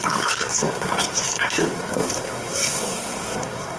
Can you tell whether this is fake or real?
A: fake